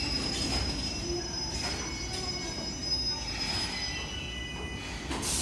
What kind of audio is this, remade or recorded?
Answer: recorded